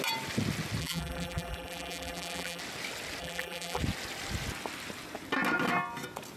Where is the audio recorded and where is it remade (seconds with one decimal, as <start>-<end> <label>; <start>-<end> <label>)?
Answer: 0.0-0.8 recorded; 0.8-2.6 remade; 2.6-3.2 recorded; 3.2-3.8 remade; 3.8-6.4 recorded